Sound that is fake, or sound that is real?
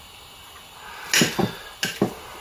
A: real